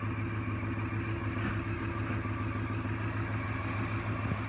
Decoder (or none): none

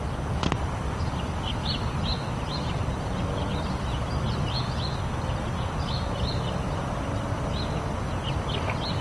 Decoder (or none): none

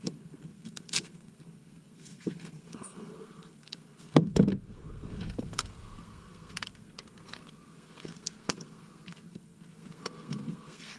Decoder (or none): codec, SNAC